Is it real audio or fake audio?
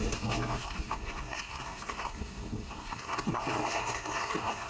fake